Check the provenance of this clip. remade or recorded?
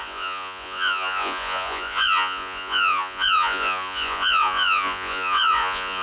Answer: remade